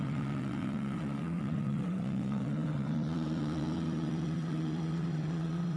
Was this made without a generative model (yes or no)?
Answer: no